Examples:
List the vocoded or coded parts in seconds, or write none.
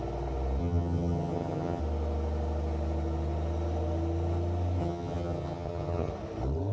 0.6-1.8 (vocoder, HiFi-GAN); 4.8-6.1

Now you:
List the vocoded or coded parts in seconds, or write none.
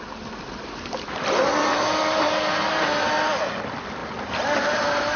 none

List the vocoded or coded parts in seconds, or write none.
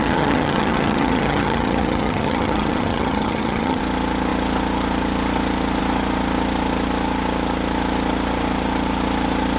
0.0-3.8 (vocoder, HiFi-GAN)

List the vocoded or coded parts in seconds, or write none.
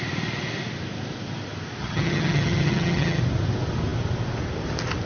1.8-3.2 (vocoder, HiFi-GAN)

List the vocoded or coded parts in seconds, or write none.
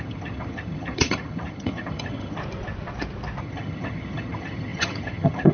0.0-2.4 (vocoder, HiFi-GAN); 3.4-5.5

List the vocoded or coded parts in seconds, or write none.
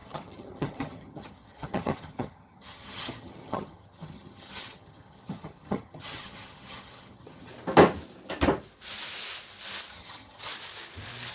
0.0-7.5 (vocoder, HiFi-GAN); 9.9-10.5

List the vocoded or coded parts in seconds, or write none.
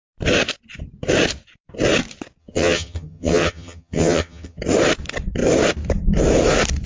2.4-4.6 (vocoder, HiFi-GAN)